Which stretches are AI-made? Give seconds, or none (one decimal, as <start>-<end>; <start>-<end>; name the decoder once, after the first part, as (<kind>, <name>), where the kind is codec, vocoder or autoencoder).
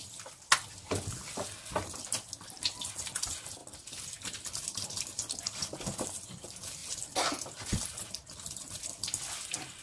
none